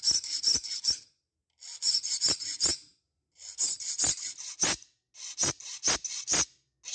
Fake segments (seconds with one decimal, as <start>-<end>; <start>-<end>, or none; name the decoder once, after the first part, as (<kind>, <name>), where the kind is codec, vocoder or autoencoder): 0.5-1.0 (vocoder, BigVGAN v2)